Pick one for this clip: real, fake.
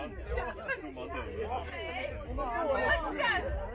real